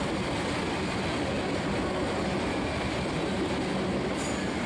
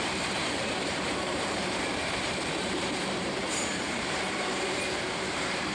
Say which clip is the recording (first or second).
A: first